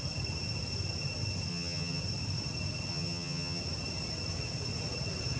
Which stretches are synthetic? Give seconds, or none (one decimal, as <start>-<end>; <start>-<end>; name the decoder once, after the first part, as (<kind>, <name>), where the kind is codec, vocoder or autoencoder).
1.5-2.0 (vocoder, HiFi-GAN); 2.9-3.6